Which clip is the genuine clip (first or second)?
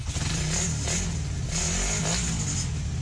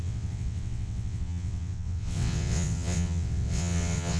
first